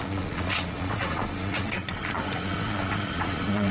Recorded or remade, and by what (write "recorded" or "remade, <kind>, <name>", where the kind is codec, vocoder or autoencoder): remade, vocoder, Vocos